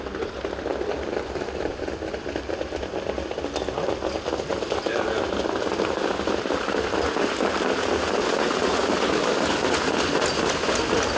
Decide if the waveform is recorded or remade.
recorded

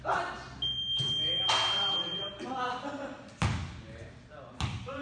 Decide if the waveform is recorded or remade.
recorded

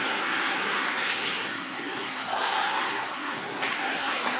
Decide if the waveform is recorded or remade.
remade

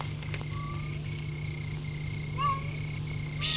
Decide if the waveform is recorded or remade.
recorded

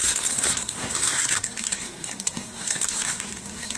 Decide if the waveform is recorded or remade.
remade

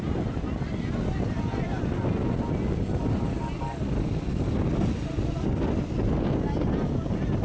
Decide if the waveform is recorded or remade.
recorded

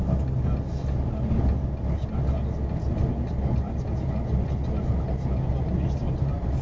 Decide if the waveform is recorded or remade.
recorded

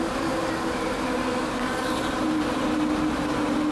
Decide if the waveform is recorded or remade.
recorded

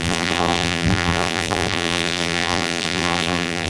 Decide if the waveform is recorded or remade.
remade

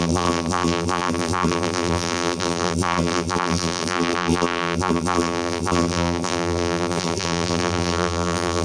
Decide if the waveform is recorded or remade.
remade